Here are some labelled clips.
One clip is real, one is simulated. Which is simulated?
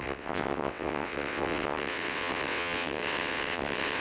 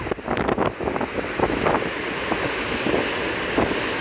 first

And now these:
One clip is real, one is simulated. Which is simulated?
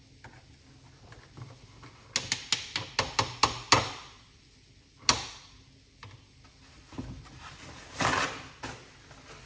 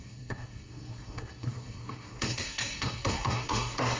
second